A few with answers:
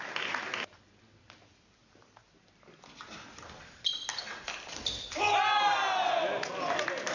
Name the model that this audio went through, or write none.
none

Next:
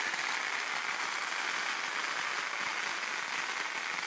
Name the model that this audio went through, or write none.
none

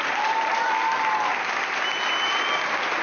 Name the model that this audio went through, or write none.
none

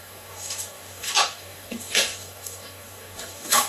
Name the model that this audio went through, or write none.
codec, DAC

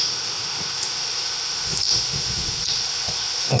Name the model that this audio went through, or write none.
codec, ZipCodec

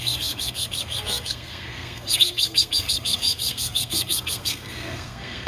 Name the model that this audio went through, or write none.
codec, SNAC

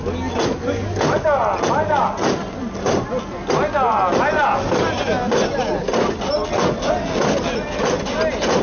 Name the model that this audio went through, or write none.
none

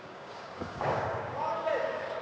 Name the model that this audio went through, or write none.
codec, DAC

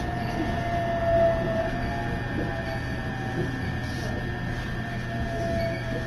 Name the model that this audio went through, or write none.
none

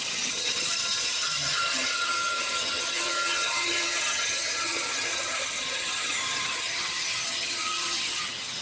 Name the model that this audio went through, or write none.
vocoder, HiFi-GAN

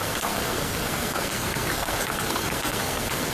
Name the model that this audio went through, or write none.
codec, SNAC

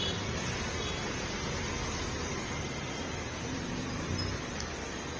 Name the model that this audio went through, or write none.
none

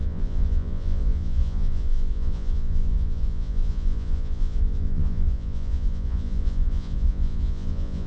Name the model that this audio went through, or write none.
vocoder, Vocos